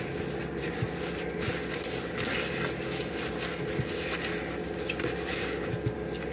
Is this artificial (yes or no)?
no